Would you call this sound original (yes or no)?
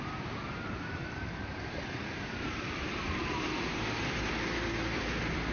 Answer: no